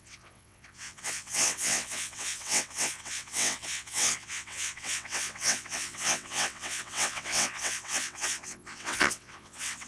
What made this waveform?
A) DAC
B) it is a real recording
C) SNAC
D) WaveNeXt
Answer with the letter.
D